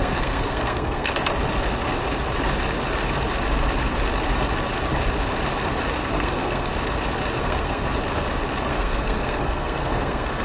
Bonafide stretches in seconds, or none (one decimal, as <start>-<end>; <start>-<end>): 1.1-6.1; 6.7-7.4; 7.9-8.7